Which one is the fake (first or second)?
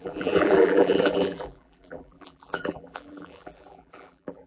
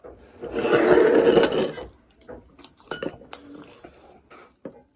first